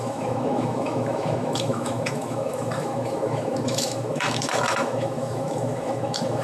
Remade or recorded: remade